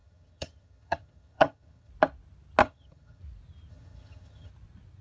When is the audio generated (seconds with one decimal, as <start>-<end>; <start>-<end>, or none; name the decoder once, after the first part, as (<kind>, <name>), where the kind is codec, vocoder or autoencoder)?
0.0-1.9 (vocoder, HiFi-GAN); 2.6-3.2; 3.7-4.5